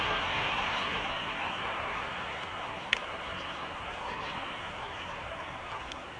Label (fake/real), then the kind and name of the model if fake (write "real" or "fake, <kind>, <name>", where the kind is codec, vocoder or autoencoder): fake, codec, SNAC